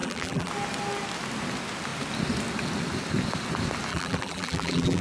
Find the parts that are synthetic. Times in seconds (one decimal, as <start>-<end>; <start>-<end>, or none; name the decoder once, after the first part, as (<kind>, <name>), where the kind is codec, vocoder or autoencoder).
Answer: 0.0-0.5 (vocoder, BigVGAN v2); 3.9-5.0